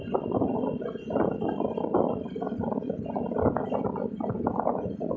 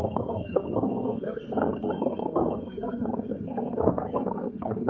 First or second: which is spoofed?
second